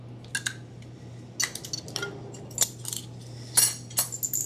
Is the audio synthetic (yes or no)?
no